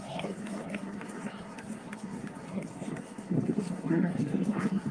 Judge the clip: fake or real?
fake